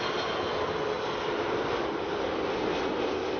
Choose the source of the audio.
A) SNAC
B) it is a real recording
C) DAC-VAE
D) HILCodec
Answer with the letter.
B